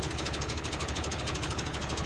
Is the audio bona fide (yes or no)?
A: no